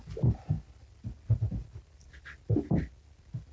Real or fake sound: real